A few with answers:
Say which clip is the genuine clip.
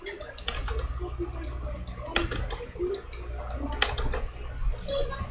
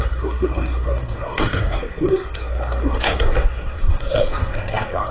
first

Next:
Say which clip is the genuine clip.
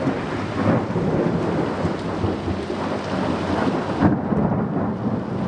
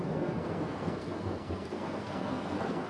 first